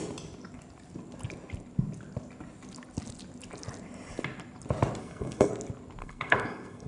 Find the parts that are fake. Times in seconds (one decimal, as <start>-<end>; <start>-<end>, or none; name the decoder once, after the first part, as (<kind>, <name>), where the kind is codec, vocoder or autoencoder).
5.0-5.5 (codec, SNAC); 6.0-6.9

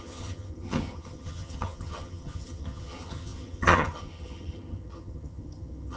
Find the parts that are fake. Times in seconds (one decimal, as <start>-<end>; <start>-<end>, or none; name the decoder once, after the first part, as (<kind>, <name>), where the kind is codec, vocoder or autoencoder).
0.0-6.0 (vocoder, HiFi-GAN)